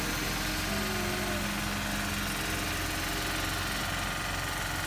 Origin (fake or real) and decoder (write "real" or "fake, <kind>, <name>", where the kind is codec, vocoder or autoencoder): real